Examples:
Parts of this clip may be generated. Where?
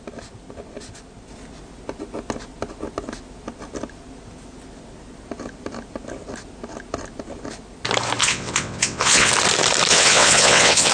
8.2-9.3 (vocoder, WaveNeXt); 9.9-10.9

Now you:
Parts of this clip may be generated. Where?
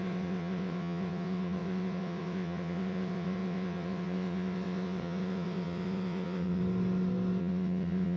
0.0-6.6 (vocoder, WaveNeXt); 7.4-8.2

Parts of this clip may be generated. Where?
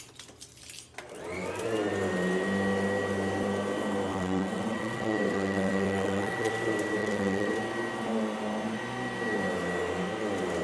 4.1-6.5 (vocoder, WaveNeXt); 7.0-7.5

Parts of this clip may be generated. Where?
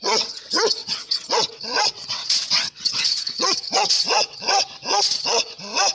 0.0-5.9 (vocoder, WaveNeXt)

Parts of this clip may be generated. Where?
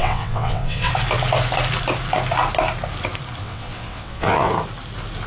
0.0-0.9 (vocoder, WaveNeXt); 3.4-4.5